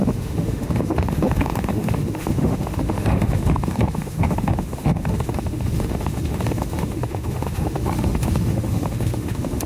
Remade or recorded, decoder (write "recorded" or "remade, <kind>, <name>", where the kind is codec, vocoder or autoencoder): remade, autoencoder, DAC-VAE